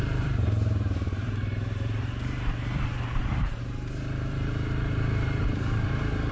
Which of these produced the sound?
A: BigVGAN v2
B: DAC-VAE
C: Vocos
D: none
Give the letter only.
A